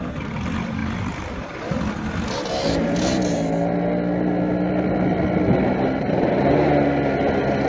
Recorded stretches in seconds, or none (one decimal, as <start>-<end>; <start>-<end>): 0.0-0.8; 1.9-7.7